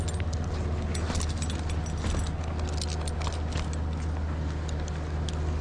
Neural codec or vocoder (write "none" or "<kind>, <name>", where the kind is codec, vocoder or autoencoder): none